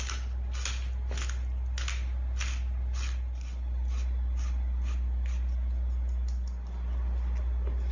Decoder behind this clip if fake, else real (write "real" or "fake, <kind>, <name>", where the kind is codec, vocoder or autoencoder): real